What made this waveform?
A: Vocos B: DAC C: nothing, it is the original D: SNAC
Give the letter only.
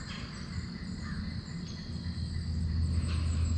C